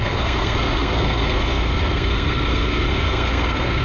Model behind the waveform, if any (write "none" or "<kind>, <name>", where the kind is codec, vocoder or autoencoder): codec, SNAC